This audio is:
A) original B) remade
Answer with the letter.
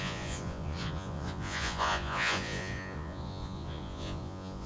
B